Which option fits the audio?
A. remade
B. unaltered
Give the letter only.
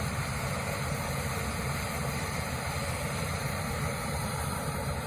A